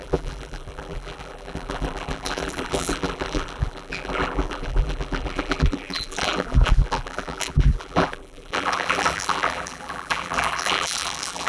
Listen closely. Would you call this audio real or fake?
fake